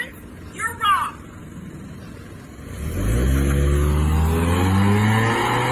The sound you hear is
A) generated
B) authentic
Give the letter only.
B